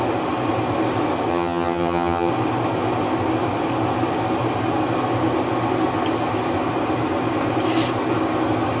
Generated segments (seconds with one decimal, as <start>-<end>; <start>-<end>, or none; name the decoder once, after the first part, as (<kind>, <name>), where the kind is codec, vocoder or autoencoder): 1.3-2.3 (vocoder, HiFi-GAN)